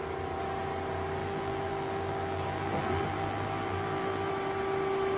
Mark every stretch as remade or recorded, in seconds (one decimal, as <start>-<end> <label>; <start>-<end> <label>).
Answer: 0.0-1.2 recorded; 1.2-4.3 remade; 4.3-5.2 recorded

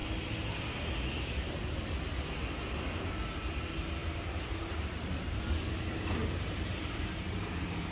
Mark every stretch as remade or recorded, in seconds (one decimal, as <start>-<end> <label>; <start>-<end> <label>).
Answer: 0.0-4.0 recorded; 4.0-5.4 remade; 5.4-6.2 recorded; 6.2-7.9 remade

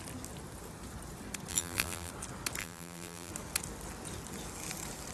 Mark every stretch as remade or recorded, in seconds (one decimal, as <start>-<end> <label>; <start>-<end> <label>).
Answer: 0.0-1.5 recorded; 1.5-2.1 remade; 2.1-2.6 recorded; 2.6-3.3 remade; 3.3-5.1 recorded

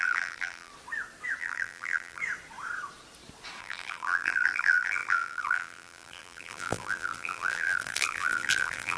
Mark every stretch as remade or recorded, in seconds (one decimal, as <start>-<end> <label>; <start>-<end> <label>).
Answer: 0.0-0.7 remade; 0.7-1.4 recorded; 1.4-2.2 remade; 2.2-3.6 recorded; 3.6-9.0 remade

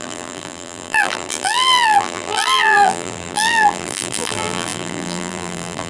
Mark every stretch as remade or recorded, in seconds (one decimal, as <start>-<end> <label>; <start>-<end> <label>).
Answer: 0.0-5.9 remade

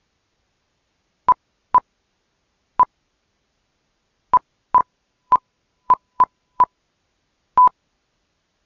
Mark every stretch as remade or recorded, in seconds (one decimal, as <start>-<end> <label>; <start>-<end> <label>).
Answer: 0.0-4.8 recorded; 4.8-6.8 remade; 6.8-8.7 recorded

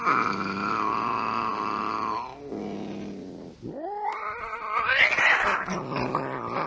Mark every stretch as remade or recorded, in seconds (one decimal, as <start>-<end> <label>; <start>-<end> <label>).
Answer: 0.0-6.7 recorded

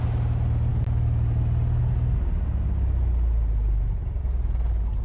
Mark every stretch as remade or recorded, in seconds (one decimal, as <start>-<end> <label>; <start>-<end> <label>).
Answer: 0.0-5.0 recorded